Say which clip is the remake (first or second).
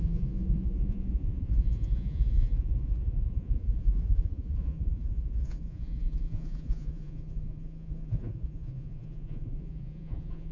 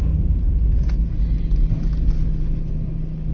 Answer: first